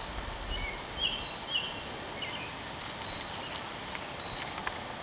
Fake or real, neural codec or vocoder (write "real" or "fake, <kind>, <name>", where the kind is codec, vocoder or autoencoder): real